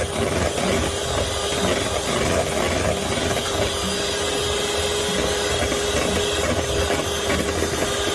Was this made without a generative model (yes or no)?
yes